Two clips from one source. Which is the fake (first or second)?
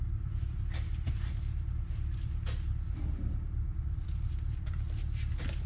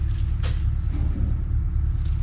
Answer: first